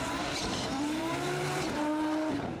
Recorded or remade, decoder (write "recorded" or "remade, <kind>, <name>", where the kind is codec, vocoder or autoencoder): remade, vocoder, BigVGAN v2